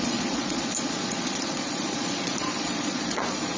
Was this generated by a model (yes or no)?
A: yes